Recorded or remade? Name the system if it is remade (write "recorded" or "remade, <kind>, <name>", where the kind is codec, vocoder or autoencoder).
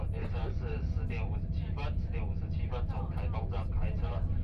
remade, vocoder, BigVGAN v2